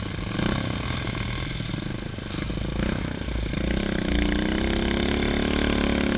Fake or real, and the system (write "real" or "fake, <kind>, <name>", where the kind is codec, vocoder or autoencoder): real